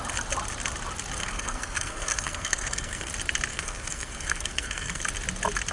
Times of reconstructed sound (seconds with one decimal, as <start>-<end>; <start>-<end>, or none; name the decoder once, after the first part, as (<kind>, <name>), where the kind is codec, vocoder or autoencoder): 1.2-3.1 (codec, SNAC); 3.5-5.0